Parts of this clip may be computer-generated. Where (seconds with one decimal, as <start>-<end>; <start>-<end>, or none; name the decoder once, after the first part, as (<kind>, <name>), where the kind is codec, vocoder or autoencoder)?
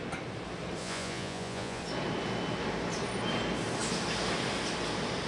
0.8-1.8 (vocoder, Vocos)